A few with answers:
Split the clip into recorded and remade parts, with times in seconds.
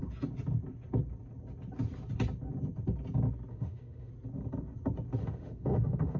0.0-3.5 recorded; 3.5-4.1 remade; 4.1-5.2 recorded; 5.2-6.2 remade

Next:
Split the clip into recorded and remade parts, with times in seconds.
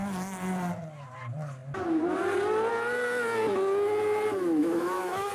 0.0-4.6 recorded; 4.6-5.3 remade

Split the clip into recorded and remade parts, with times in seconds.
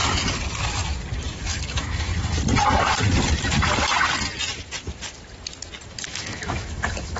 0.0-1.4 recorded; 1.4-2.1 remade; 2.1-5.9 recorded; 5.9-7.2 remade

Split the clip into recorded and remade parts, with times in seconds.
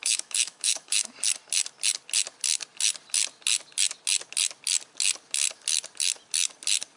0.0-1.0 remade; 1.0-7.0 recorded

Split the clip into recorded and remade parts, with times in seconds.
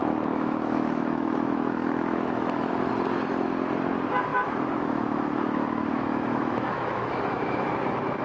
0.0-2.9 remade; 2.9-4.3 recorded; 4.3-8.2 remade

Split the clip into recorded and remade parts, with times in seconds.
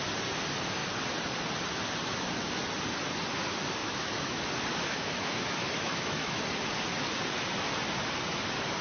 0.0-3.8 recorded; 3.8-4.4 remade; 4.4-4.9 recorded; 4.9-6.4 remade; 6.4-8.8 recorded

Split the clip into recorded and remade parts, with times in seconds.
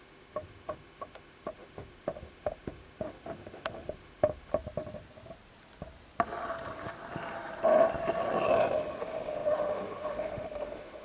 0.0-4.5 remade; 4.5-9.0 recorded; 9.0-11.0 remade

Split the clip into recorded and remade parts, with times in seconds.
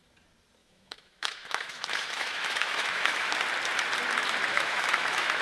0.0-0.6 recorded; 0.6-3.3 remade; 3.3-4.5 recorded; 4.5-5.4 remade